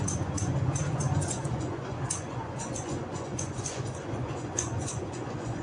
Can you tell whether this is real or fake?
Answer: fake